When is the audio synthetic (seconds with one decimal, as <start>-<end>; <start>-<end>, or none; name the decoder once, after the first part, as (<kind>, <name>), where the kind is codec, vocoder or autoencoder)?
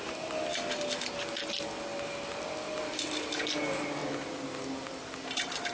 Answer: none